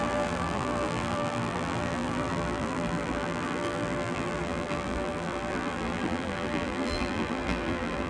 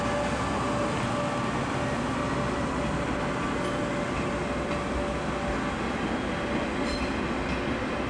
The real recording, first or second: second